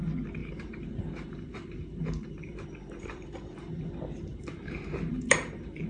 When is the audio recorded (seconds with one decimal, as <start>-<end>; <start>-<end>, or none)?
0.0-0.4; 3.9-4.3